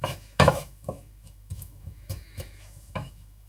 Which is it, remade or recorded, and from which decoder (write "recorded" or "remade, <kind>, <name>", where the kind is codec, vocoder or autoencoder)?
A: remade, autoencoder, DAC-VAE